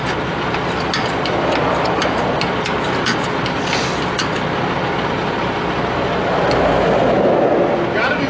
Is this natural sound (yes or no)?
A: yes